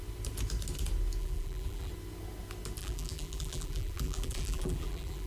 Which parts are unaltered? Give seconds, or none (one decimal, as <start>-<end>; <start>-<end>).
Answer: 0.0-1.2; 1.9-2.8